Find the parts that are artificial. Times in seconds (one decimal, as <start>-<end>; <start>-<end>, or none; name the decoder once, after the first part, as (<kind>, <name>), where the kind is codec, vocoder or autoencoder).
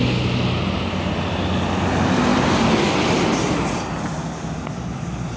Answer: none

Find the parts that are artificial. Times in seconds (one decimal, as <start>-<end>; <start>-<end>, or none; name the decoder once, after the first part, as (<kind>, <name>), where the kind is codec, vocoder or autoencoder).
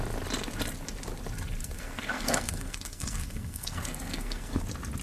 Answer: 1.6-4.6 (codec, SNAC)